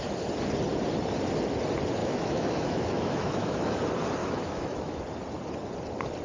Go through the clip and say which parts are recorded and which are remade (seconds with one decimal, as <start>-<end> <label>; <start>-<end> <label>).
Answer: 0.0-2.0 recorded; 2.0-3.8 remade; 3.8-4.2 recorded; 4.2-5.0 remade; 5.0-6.2 recorded